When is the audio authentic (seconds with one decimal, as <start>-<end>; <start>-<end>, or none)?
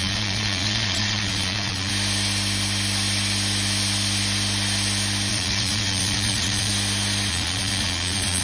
1.9-5.3; 6.7-7.3